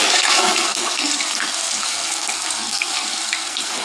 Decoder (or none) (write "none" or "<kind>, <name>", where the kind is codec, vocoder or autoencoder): codec, SNAC